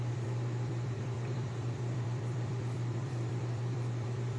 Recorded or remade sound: remade